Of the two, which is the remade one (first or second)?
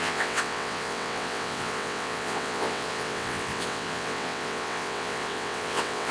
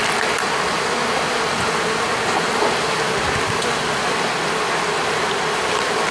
first